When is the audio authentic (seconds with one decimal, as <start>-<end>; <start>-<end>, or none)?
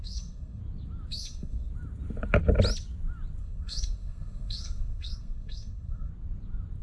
0.6-1.1; 1.7-3.4; 6.1-6.8